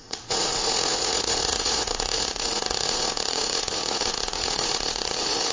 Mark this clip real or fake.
fake